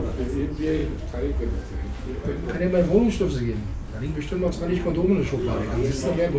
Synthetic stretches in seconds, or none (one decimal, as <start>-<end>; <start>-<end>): none